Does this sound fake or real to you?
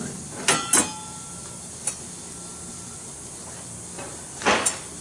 real